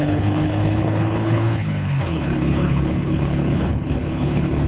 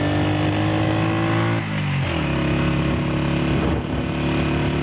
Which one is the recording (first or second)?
second